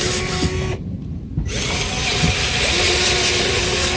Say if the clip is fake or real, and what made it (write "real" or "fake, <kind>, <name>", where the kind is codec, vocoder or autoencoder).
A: real